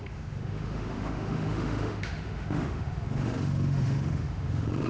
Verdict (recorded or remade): remade